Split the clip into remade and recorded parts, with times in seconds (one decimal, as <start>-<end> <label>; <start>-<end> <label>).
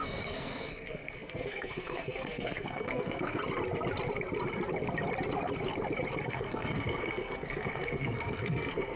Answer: 0.0-3.4 remade; 3.4-6.3 recorded; 6.3-9.0 remade